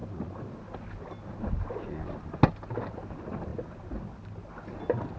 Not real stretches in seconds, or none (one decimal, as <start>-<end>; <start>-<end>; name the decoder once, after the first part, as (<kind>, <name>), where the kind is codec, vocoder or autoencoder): none